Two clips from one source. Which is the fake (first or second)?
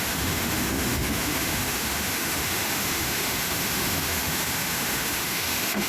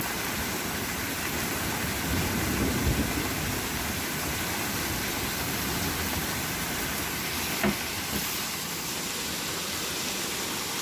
first